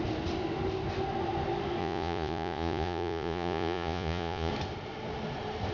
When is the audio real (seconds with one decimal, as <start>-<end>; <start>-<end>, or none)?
0.0-1.8; 4.5-5.7